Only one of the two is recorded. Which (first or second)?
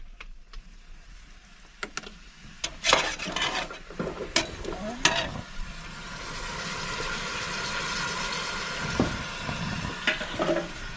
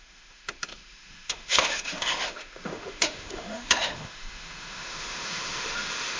first